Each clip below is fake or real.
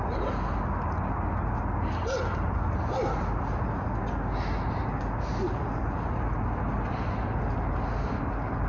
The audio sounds real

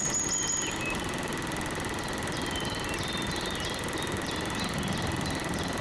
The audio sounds real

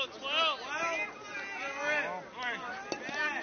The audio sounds real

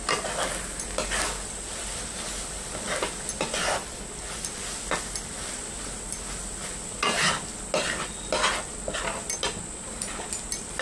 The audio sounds real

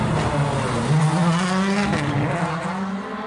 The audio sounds real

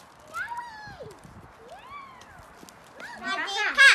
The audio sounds real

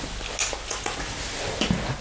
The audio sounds real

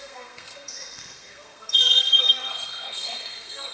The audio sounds fake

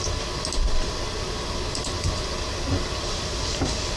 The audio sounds real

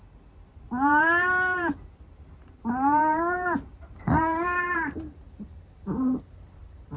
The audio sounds fake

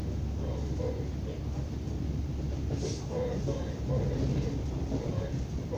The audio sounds real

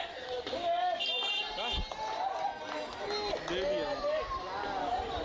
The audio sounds real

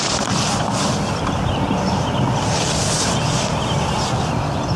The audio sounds real